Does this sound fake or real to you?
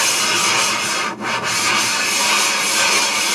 real